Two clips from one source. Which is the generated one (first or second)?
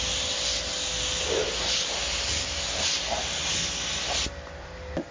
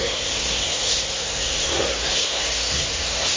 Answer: second